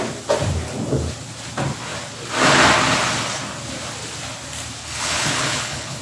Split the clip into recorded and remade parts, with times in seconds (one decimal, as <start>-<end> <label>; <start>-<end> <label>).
0.0-4.8 recorded; 4.8-6.0 remade